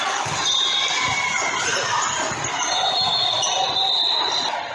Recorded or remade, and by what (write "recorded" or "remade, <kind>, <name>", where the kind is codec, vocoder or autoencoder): remade, vocoder, BigVGAN v2